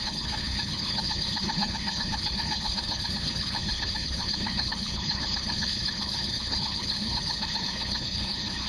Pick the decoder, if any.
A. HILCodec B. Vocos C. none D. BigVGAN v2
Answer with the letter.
A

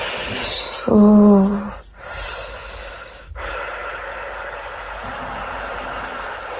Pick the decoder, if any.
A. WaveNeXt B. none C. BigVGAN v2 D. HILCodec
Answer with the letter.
B